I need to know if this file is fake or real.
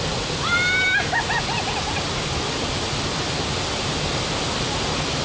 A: real